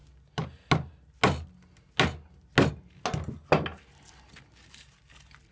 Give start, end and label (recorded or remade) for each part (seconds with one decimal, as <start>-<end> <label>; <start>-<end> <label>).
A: 0.0-5.5 recorded